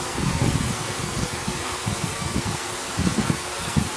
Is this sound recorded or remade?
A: remade